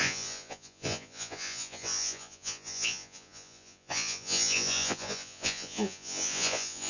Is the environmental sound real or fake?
fake